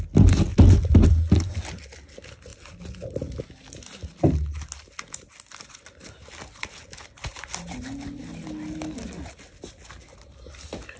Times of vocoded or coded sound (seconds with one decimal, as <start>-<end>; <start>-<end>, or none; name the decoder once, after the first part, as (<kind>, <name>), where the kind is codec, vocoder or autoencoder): none